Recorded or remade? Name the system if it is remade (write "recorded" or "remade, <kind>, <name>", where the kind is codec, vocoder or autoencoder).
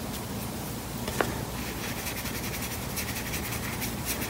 recorded